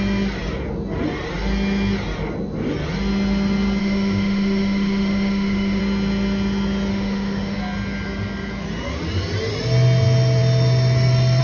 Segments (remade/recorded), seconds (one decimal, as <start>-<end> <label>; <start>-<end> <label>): 0.0-3.8 recorded; 3.8-5.8 remade; 5.8-6.9 recorded; 6.9-7.6 remade; 7.6-11.4 recorded